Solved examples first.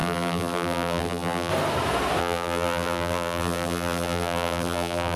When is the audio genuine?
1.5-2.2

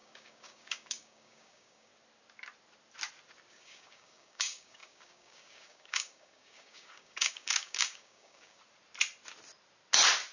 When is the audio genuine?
1.9-3.5; 8.6-10.3

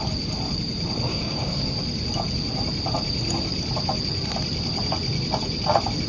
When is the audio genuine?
0.0-1.1; 1.7-6.1